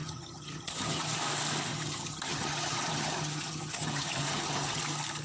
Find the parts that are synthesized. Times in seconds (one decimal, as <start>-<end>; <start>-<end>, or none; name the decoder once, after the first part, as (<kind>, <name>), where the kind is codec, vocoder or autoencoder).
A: 0.0-1.2 (vocoder, HiFi-GAN); 1.7-4.8